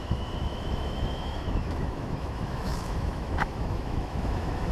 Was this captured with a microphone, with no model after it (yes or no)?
no